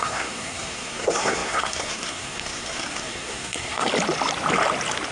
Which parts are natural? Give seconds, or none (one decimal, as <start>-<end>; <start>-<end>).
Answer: 3.9-5.1

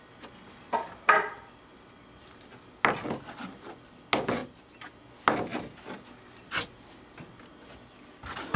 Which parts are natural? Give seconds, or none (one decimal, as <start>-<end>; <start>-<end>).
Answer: 0.0-4.4; 4.9-8.6

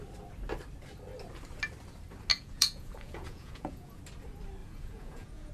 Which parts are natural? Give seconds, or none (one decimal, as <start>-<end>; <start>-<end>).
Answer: 0.0-2.3; 4.0-4.6